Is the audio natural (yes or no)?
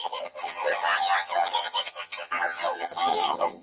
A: no